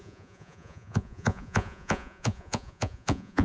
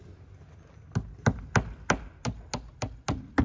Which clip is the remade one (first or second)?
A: first